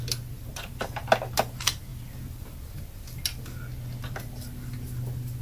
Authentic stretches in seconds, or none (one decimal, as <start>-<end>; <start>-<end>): 0.0-5.4